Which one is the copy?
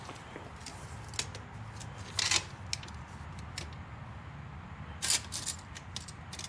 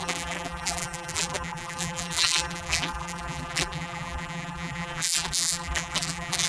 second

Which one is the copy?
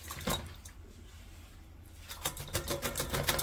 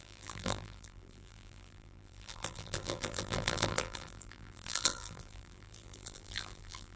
second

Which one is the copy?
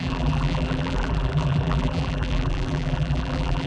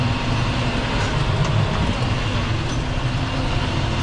first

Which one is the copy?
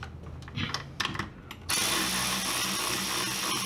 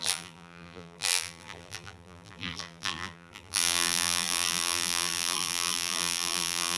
second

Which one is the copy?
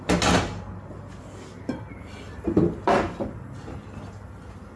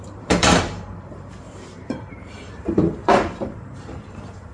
second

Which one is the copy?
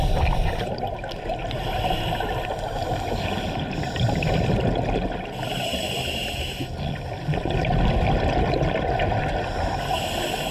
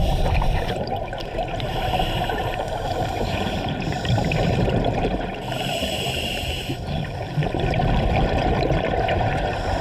second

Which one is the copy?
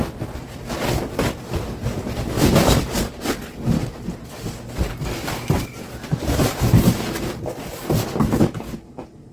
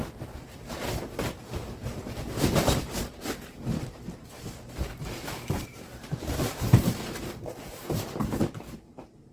second